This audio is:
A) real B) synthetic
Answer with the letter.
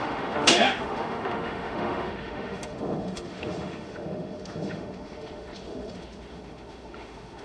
B